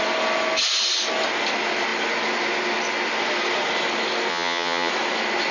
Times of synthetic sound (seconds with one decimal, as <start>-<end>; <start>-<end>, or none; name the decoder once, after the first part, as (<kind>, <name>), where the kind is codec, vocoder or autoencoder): 4.3-4.9 (vocoder, HiFi-GAN)